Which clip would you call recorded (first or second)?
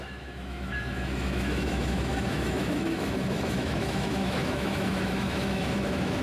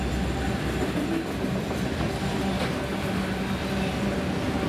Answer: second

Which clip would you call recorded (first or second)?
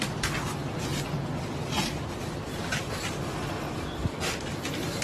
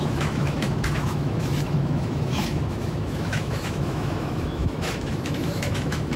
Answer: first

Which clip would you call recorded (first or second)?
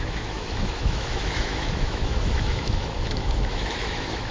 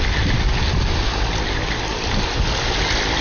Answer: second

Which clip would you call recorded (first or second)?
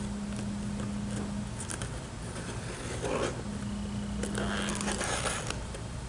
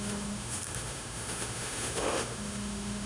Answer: first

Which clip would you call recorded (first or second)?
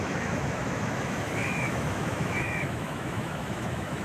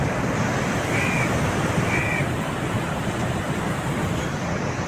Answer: second